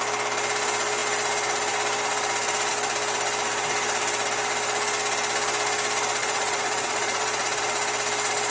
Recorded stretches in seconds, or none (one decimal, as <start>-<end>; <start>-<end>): 0.0-6.2; 7.6-8.5